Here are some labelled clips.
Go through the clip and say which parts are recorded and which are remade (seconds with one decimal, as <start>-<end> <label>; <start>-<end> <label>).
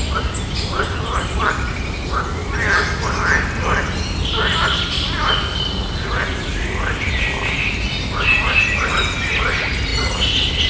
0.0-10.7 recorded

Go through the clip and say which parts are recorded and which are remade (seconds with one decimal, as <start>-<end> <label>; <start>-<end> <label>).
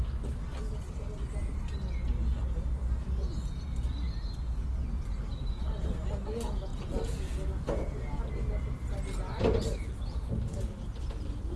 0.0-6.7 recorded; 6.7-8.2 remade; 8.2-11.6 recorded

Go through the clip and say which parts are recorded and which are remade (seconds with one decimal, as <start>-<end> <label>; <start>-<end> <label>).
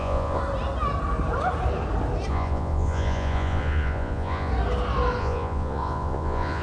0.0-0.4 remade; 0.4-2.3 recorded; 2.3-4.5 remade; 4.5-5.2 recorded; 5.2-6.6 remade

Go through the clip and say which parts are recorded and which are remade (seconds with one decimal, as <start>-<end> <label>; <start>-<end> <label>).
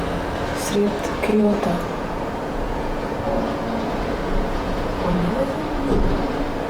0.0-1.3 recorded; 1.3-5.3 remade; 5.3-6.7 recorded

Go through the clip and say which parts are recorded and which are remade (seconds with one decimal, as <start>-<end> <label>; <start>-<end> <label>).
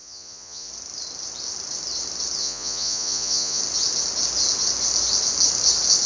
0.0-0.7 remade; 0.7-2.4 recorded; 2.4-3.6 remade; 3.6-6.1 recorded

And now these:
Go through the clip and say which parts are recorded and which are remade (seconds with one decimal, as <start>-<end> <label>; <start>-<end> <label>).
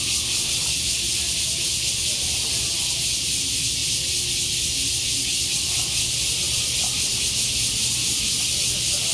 0.0-9.1 recorded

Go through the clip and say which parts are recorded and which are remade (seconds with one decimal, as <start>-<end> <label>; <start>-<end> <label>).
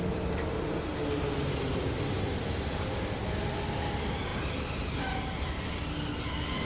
0.0-6.7 recorded